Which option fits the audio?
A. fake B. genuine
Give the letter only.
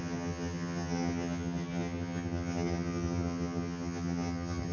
A